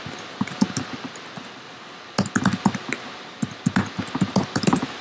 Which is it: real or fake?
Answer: real